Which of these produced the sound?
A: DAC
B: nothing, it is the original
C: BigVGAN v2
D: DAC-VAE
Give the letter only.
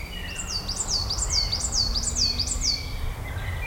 C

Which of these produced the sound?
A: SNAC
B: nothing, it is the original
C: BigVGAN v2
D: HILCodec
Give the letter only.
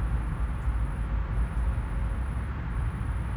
B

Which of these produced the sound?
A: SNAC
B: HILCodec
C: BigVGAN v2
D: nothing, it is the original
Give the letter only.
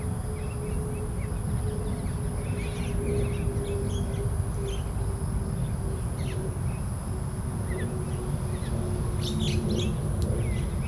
D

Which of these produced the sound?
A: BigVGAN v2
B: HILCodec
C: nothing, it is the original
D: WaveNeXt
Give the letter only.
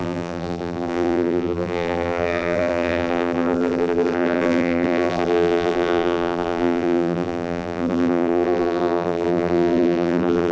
A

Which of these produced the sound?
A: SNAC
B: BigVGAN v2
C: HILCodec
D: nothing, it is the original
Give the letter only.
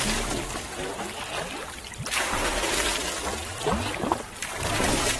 B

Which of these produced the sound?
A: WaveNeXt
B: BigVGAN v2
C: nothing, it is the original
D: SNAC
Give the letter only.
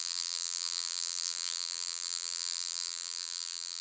B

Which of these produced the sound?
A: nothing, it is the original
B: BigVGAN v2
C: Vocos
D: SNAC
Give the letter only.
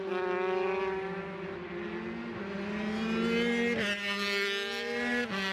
A